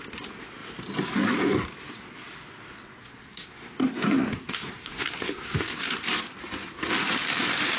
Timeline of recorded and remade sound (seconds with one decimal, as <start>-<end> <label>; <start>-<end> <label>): 0.0-3.0 recorded; 3.0-6.0 remade; 6.0-7.8 recorded